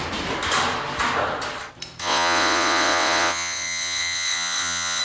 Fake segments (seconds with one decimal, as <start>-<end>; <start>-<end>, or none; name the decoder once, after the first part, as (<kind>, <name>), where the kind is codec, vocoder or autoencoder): 2.0-5.0 (vocoder, WaveNeXt)